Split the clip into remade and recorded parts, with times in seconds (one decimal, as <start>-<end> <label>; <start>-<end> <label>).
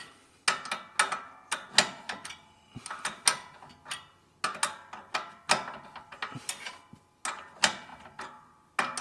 0.0-9.0 recorded